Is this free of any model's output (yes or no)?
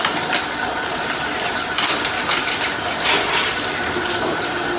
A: yes